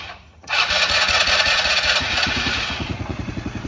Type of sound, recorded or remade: remade